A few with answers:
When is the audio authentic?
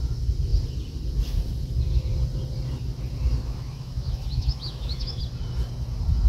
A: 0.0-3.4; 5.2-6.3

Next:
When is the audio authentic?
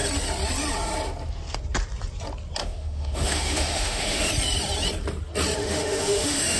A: 0.0-2.6; 4.3-5.6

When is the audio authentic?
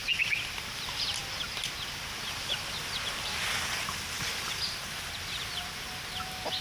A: 0.0-6.6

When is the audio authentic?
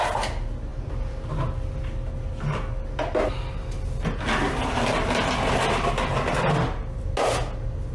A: 0.0-7.9